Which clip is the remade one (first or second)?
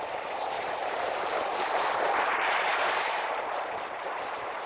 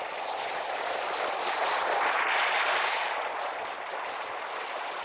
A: first